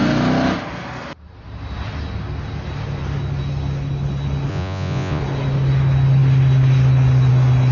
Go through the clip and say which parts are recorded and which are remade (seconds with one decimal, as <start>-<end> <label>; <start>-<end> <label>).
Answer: 0.0-4.5 recorded; 4.5-5.2 remade; 5.2-7.7 recorded